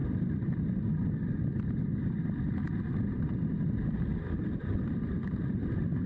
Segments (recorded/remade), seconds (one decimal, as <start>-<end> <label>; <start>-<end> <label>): 0.0-6.1 recorded